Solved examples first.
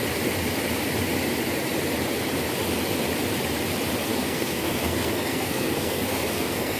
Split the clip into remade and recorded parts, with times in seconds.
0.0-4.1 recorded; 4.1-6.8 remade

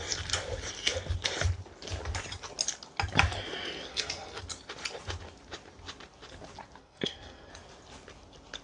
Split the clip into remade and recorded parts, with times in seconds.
0.0-3.9 recorded; 3.9-4.4 remade; 4.4-6.8 recorded; 6.8-7.5 remade; 7.5-8.6 recorded

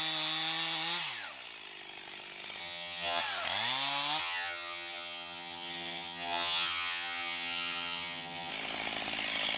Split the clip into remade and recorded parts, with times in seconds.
0.0-2.6 recorded; 2.6-3.2 remade; 3.2-4.2 recorded; 4.2-8.5 remade; 8.5-9.6 recorded

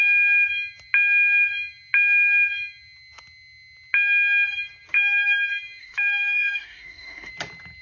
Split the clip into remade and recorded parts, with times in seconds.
0.0-5.8 recorded; 5.8-7.3 remade; 7.3-7.8 recorded

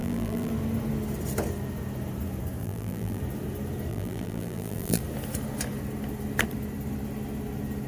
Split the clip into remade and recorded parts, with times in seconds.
0.0-0.5 remade; 0.5-2.6 recorded; 2.6-3.2 remade; 3.2-3.9 recorded; 3.9-5.0 remade; 5.0-7.9 recorded

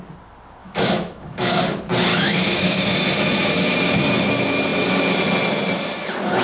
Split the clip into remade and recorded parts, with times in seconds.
0.0-0.6 recorded; 0.6-1.6 remade; 1.6-2.1 recorded; 2.1-2.9 remade; 2.9-6.4 recorded

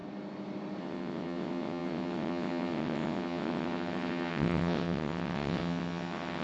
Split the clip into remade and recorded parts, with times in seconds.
0.0-0.8 recorded; 0.8-6.4 remade

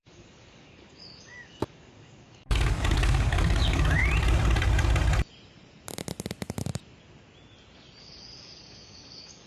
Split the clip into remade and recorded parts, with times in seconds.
0.0-4.0 remade; 4.0-8.0 recorded; 8.0-9.5 remade